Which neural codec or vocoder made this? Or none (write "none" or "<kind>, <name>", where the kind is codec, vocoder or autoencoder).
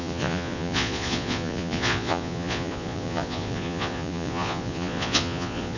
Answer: vocoder, Vocos